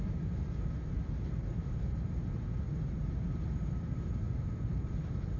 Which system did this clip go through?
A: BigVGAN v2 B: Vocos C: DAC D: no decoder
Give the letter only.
A